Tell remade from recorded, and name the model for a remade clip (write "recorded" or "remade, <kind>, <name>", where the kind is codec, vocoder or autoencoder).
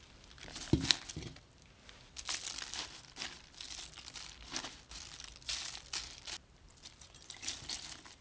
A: recorded